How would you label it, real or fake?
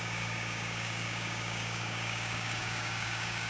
fake